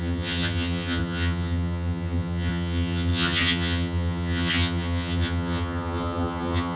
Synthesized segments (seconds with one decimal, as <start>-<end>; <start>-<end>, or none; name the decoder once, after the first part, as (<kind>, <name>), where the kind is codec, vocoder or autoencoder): 0.0-6.8 (vocoder, HiFi-GAN)